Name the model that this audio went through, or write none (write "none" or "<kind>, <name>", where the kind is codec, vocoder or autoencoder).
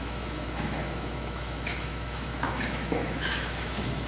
autoencoder, DAC-VAE